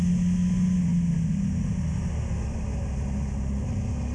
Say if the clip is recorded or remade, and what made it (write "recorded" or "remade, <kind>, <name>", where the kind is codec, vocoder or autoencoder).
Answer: recorded